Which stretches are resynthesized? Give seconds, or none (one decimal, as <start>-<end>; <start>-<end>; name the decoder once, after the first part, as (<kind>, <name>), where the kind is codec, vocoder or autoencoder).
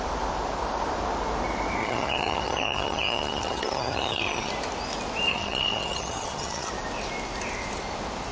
1.8-4.5 (vocoder, HiFi-GAN); 5.3-6.7